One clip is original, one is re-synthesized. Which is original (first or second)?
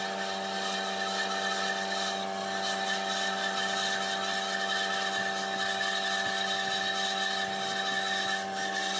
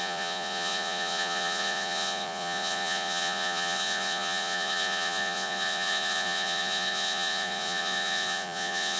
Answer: first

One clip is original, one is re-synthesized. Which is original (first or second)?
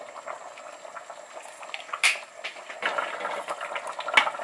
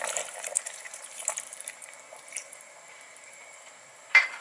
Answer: first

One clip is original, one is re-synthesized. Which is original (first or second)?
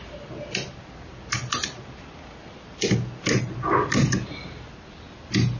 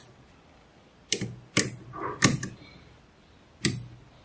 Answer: first